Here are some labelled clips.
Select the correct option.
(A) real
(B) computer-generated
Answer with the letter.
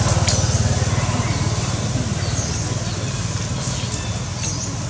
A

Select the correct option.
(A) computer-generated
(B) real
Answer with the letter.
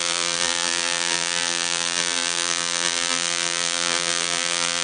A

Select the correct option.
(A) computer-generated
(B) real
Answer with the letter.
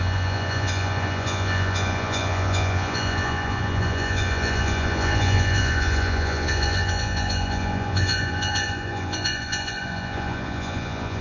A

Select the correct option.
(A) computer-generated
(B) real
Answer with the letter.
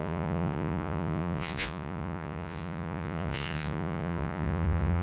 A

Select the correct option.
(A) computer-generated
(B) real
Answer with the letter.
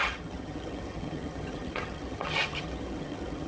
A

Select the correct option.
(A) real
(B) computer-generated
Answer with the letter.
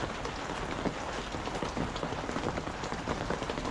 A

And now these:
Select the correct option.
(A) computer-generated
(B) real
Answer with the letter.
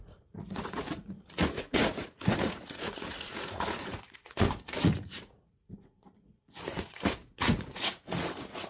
A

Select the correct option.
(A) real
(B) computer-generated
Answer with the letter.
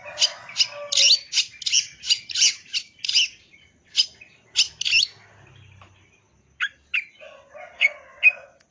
A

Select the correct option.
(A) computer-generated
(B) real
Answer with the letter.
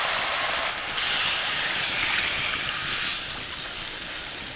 B